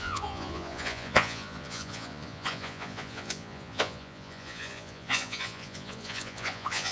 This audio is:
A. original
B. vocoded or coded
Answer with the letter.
B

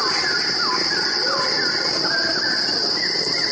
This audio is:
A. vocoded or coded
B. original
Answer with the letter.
B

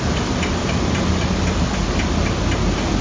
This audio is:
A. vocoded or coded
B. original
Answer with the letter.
B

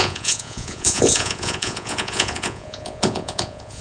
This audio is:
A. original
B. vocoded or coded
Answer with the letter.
B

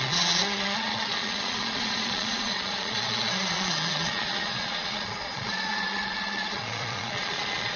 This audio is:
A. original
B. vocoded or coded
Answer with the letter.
B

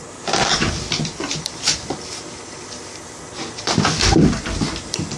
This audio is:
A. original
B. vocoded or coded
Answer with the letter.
A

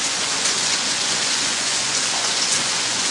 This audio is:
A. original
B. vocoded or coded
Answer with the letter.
B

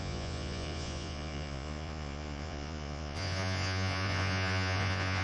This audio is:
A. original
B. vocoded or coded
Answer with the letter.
B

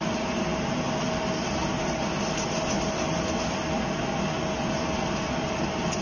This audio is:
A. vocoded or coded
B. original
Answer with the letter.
B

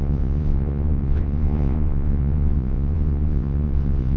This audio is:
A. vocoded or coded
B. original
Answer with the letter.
A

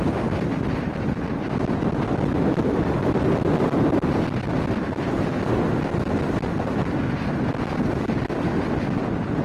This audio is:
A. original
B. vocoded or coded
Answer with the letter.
A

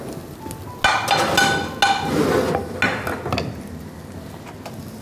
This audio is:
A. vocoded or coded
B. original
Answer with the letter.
B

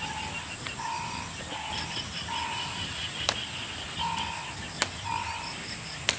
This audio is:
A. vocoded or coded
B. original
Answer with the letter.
B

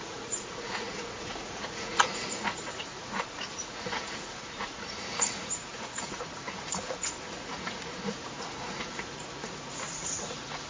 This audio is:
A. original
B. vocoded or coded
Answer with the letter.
B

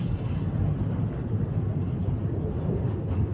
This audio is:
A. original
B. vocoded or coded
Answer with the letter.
A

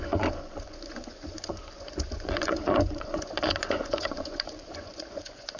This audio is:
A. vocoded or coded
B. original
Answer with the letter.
A